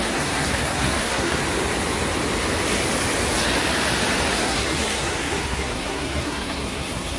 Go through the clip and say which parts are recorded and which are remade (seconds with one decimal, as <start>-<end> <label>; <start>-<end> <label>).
0.0-1.4 remade; 1.4-4.4 recorded; 4.4-7.2 remade